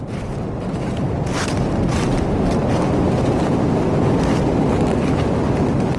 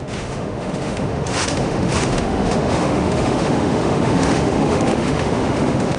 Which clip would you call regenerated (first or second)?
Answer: second